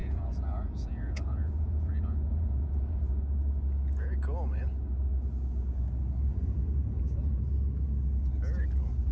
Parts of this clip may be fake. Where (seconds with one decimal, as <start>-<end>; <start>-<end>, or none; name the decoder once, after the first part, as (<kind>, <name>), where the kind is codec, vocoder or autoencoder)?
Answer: 0.0-3.2 (vocoder, Vocos); 6.3-7.4